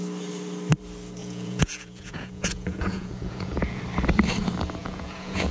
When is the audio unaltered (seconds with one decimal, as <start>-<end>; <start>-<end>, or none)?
0.0-1.2; 3.8-4.8